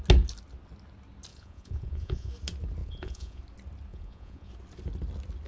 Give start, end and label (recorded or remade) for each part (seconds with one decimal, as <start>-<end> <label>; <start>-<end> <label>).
0.0-1.3 recorded; 1.3-2.3 remade; 2.3-2.8 recorded; 2.8-3.4 remade; 3.4-3.9 recorded; 3.9-4.5 remade; 4.5-5.5 recorded